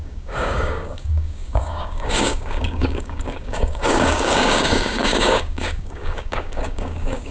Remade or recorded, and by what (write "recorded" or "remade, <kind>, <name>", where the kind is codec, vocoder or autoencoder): remade, codec, DAC